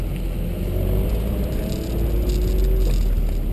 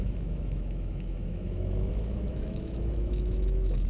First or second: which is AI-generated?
second